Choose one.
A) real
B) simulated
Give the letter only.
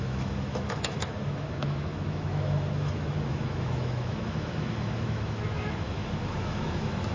B